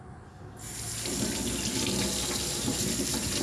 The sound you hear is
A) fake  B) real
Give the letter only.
B